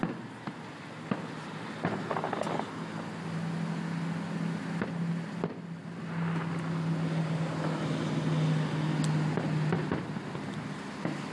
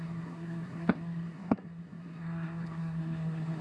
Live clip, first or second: first